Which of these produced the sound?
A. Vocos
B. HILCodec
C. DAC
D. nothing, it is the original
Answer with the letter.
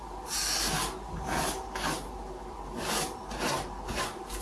D